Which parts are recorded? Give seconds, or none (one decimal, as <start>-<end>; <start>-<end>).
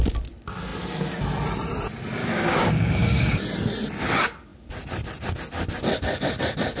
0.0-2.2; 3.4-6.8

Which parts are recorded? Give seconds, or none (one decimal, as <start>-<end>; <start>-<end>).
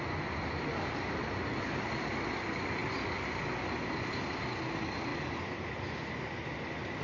0.0-7.0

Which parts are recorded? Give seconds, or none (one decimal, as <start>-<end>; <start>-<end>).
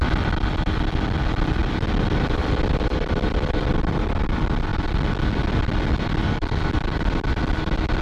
0.0-1.6; 4.2-8.0